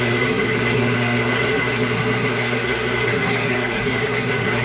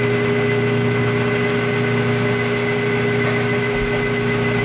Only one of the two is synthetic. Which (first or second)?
first